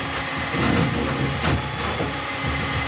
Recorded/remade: recorded